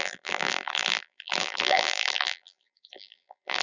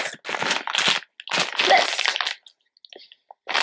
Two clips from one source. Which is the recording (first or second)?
second